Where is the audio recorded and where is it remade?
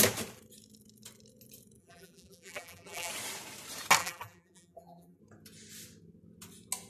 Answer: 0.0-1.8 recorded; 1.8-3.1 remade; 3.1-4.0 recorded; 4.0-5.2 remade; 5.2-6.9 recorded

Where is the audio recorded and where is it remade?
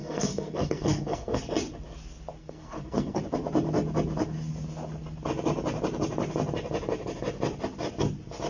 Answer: 0.0-1.4 remade; 1.4-2.4 recorded; 2.4-3.2 remade; 3.2-8.5 recorded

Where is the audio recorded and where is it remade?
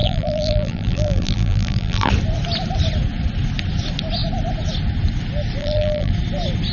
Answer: 0.0-2.1 remade; 2.1-5.6 recorded; 5.6-6.1 remade; 6.1-6.7 recorded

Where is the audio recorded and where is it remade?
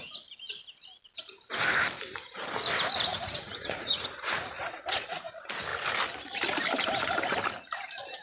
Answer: 0.0-3.1 recorded; 3.1-5.3 remade; 5.3-8.2 recorded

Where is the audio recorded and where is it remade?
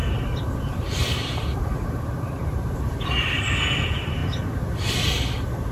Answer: 0.0-3.4 remade; 3.4-5.7 recorded